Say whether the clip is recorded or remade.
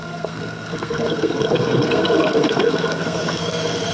remade